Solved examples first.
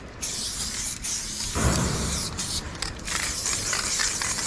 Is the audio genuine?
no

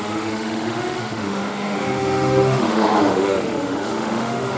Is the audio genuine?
no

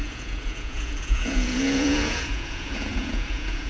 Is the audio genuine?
no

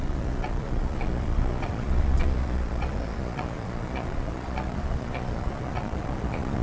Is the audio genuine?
no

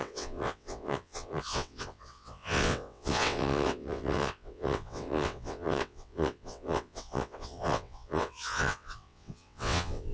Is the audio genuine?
no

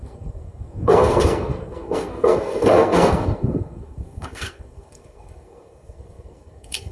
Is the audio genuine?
no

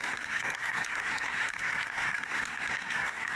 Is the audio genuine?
no